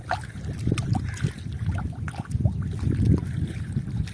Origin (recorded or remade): recorded